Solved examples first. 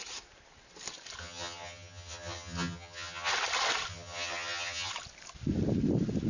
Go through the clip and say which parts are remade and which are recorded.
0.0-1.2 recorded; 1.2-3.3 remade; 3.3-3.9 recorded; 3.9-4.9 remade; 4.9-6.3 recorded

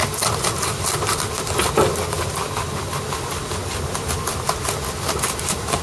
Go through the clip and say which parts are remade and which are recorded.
0.0-5.8 recorded

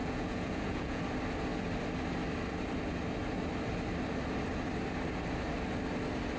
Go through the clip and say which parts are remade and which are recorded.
0.0-1.0 remade; 1.0-6.4 recorded

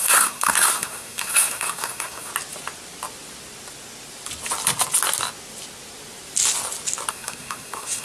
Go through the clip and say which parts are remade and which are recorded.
0.0-2.3 remade; 2.3-7.1 recorded; 7.1-8.0 remade

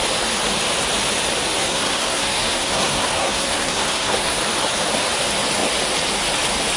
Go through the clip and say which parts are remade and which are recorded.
0.0-1.6 recorded; 1.6-4.4 remade; 4.4-6.8 recorded

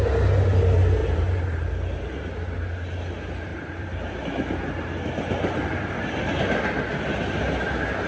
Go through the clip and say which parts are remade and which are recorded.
0.0-1.0 recorded; 1.0-2.3 remade; 2.3-3.5 recorded; 3.5-6.4 remade; 6.4-8.1 recorded